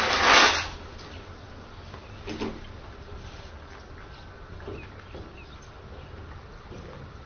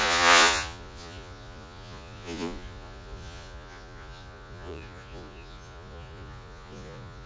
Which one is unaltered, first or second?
first